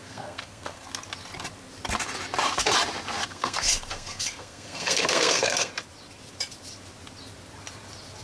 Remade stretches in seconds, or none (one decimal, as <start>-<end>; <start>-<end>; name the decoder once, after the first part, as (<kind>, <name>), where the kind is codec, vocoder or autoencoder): 0.0-0.9 (codec, SNAC); 3.2-5.7